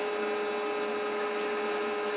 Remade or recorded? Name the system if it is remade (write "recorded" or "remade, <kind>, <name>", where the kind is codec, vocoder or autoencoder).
recorded